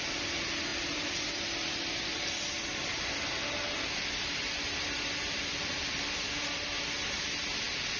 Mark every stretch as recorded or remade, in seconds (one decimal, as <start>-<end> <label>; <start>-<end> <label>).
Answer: 0.0-0.7 recorded; 0.7-2.9 remade; 2.9-8.0 recorded